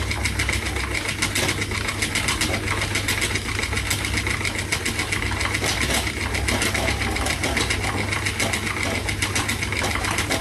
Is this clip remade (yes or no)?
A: no